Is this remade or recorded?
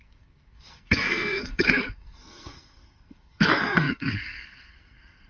remade